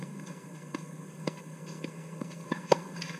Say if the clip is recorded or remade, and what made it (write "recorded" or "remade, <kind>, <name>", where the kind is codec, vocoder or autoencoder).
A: remade, codec, SNAC